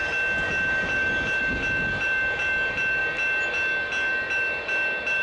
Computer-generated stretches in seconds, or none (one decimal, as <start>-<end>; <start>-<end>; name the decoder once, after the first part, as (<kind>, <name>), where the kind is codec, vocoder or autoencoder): none